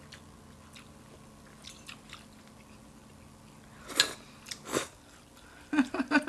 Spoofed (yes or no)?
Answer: no